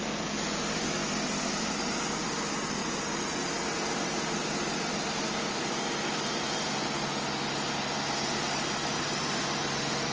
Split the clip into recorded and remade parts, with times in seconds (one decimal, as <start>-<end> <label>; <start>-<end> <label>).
0.0-10.1 recorded